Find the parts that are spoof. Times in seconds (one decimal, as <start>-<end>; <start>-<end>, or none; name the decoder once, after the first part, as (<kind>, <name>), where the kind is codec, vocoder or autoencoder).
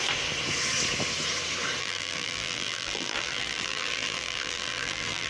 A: 1.8-5.3 (vocoder, BigVGAN v2)